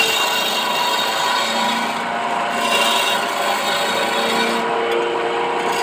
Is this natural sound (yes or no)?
yes